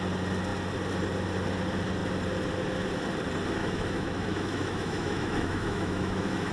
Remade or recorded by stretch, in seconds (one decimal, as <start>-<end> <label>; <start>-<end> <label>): 0.0-3.6 recorded; 3.6-6.5 remade